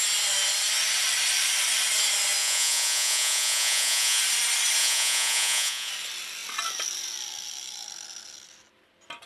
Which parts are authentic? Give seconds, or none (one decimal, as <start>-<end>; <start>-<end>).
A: 0.0-2.4; 4.2-4.8; 5.9-9.3